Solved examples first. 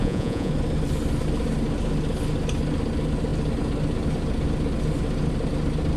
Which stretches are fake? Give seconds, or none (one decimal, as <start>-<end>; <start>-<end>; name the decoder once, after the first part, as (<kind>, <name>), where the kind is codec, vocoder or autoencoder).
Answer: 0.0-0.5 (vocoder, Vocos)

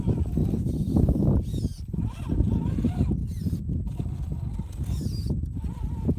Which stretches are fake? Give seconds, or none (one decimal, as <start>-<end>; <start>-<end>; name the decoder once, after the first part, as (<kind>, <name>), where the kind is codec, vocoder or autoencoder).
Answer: 0.4-1.2 (vocoder, Vocos)

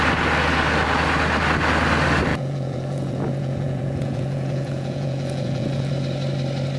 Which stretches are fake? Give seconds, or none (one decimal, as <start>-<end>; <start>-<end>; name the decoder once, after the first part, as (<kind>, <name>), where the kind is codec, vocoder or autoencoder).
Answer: 2.3-5.9 (vocoder, Vocos)